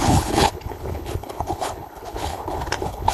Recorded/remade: remade